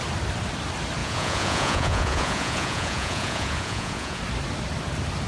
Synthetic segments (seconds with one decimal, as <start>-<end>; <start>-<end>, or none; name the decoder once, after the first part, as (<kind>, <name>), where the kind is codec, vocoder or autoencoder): 1.0-4.2 (vocoder, Vocos)